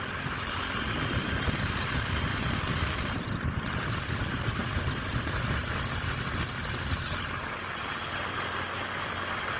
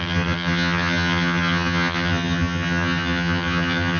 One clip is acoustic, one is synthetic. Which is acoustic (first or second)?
first